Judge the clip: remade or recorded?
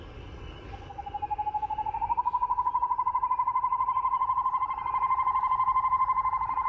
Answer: recorded